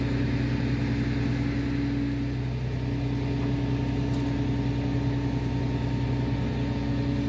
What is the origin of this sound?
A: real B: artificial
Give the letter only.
A